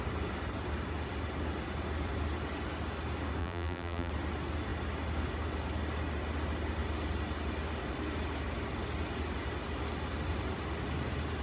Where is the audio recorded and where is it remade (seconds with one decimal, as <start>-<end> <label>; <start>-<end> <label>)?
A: 0.0-3.4 recorded; 3.4-4.1 remade; 4.1-11.4 recorded